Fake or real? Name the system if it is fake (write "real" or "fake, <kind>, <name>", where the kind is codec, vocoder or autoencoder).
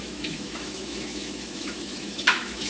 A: fake, autoencoder, DAC-VAE